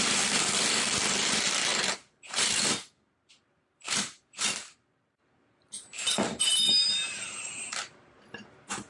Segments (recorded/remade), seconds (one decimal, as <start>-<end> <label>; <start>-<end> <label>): 0.0-8.9 remade